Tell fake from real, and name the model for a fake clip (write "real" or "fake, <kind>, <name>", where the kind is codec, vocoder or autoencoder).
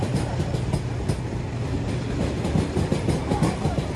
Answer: real